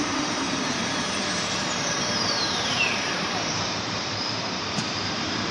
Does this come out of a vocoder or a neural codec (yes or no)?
yes